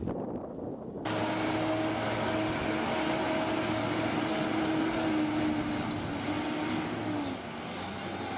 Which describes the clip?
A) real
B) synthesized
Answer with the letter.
A